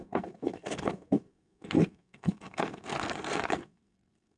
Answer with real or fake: fake